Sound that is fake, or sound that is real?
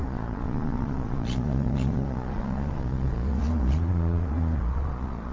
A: fake